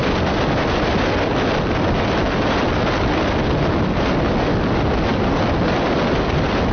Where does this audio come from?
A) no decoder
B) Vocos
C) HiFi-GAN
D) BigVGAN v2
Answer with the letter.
A